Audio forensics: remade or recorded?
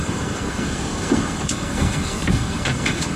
remade